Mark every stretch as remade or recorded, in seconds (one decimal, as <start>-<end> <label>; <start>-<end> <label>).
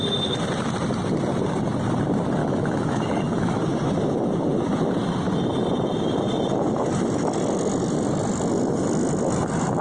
0.0-2.4 recorded; 2.4-3.6 remade; 3.6-9.8 recorded